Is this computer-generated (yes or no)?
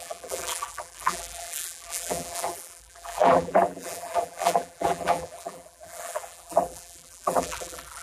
yes